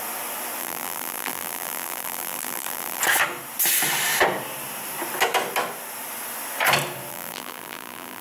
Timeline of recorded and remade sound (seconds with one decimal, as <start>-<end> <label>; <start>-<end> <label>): 0.0-0.6 recorded; 0.6-3.0 remade; 3.0-7.1 recorded; 7.1-8.2 remade